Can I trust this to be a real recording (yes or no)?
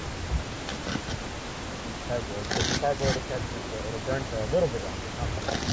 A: yes